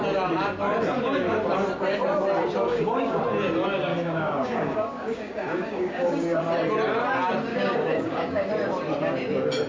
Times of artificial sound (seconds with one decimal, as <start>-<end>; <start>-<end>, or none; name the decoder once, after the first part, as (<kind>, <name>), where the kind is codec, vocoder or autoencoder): 2.7-3.2 (codec, DAC); 3.9-6.4; 7.5-8.5